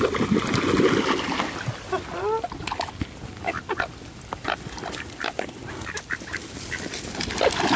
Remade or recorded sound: recorded